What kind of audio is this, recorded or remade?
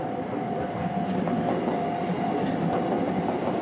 recorded